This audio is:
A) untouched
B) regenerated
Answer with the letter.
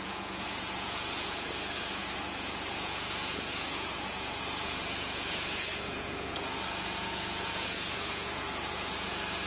B